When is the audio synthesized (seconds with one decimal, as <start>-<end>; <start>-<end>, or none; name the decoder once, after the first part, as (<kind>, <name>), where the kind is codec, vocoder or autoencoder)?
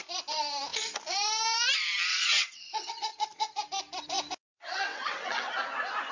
2.1-2.9 (vocoder, WaveNeXt); 4.5-5.5